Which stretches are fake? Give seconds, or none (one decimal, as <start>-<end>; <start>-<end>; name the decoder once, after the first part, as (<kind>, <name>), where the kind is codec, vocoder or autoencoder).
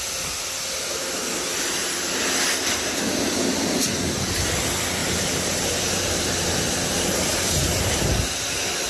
5.0-8.0 (vocoder, BigVGAN v2)